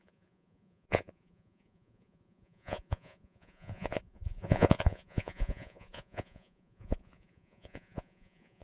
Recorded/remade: remade